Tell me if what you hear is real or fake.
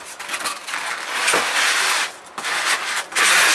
real